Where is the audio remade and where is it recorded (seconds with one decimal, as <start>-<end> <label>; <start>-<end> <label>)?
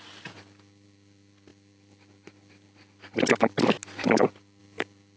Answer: 0.0-5.2 recorded